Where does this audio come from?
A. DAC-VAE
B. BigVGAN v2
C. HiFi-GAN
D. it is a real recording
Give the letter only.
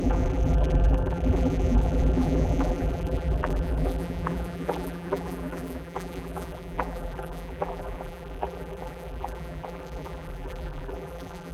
B